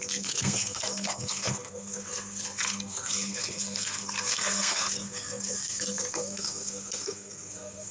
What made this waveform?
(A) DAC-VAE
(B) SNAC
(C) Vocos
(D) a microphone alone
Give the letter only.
B